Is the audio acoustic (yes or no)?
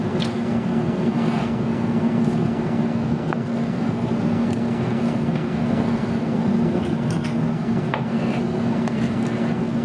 no